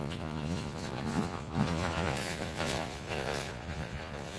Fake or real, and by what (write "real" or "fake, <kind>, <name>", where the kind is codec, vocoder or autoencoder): fake, vocoder, Vocos